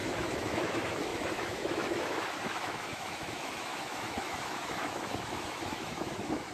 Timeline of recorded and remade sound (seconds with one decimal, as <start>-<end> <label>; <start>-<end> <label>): 0.0-6.5 remade